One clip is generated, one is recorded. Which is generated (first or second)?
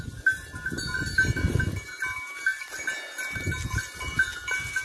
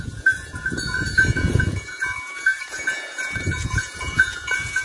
second